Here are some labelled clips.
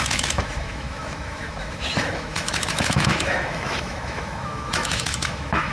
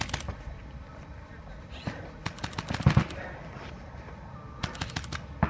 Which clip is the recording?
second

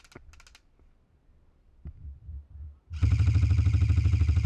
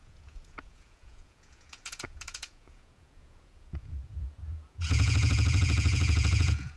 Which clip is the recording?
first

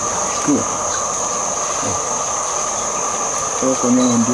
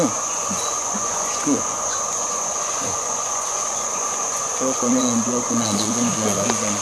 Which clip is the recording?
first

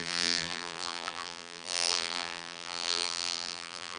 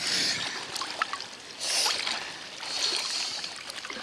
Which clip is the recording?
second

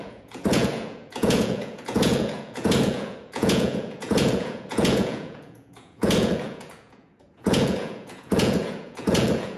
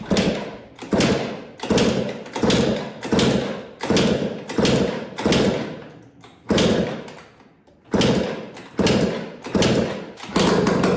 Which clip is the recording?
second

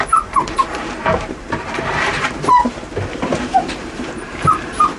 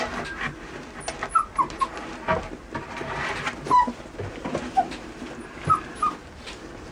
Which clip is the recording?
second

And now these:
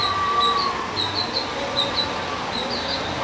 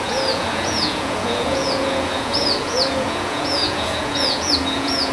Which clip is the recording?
first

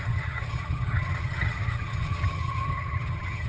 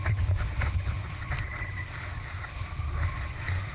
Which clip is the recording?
second